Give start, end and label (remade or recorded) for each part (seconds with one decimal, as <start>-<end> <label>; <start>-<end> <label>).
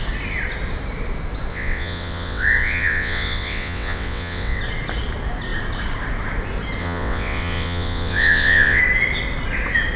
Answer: 0.0-1.5 recorded; 1.5-4.6 remade; 4.6-6.8 recorded; 6.8-8.8 remade; 8.8-10.0 recorded